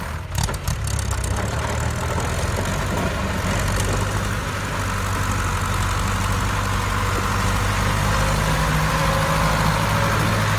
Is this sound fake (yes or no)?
no